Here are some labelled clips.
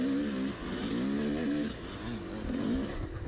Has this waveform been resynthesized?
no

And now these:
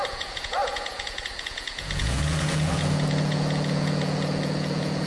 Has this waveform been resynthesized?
yes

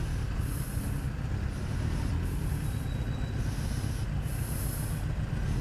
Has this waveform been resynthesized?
no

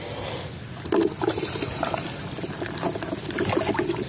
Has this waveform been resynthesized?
no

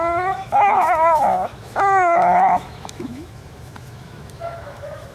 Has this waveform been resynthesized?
yes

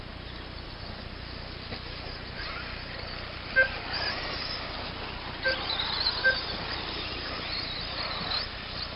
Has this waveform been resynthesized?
no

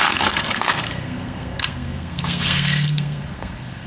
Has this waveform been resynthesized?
yes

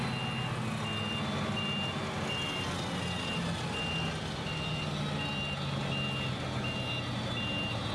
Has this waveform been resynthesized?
no